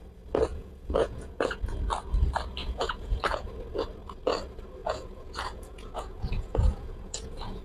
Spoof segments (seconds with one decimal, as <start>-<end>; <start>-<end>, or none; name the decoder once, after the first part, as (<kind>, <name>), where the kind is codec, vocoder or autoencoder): 0.5-1.6 (vocoder, Vocos); 2.6-3.5; 4.8-7.6

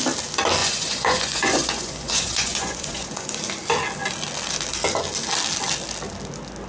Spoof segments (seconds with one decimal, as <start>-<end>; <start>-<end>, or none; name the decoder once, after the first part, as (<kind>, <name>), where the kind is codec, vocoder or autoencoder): 0.6-3.4 (vocoder, Vocos)

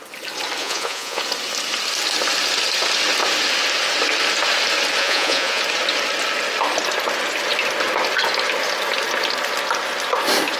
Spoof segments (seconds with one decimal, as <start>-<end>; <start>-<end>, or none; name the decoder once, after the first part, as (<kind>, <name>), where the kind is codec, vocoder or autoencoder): 0.6-1.2 (vocoder, Vocos); 5.0-5.6

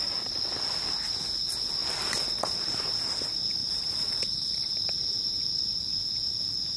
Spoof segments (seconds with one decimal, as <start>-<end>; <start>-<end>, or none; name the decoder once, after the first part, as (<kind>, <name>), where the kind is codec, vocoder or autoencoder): 3.6-4.7 (vocoder, Vocos)

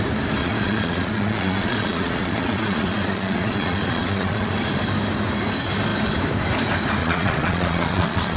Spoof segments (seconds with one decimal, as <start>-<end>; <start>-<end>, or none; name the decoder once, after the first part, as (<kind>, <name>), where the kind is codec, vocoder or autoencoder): 0.4-4.5 (vocoder, Vocos); 7.0-8.4